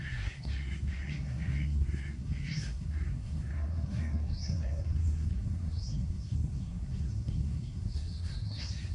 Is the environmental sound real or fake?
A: fake